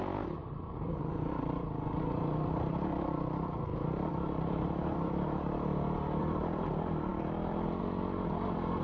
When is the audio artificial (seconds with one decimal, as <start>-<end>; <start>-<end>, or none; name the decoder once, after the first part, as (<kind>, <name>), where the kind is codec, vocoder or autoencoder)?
none

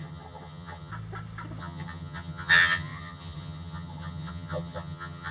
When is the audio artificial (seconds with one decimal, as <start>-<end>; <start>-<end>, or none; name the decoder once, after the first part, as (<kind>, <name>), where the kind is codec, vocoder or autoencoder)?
0.0-0.9 (vocoder, HiFi-GAN); 1.6-5.3

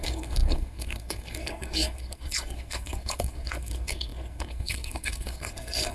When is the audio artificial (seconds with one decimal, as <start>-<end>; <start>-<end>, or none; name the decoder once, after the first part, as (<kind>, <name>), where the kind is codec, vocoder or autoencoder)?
0.0-5.9 (codec, SNAC)

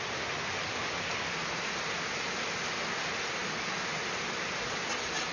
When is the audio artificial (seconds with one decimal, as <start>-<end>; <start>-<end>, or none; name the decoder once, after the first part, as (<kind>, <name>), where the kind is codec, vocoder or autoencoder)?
none

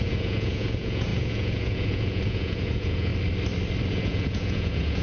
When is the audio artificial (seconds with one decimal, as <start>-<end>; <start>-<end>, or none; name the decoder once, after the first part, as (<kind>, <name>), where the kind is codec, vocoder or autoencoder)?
0.0-3.1 (vocoder, Vocos); 3.9-5.0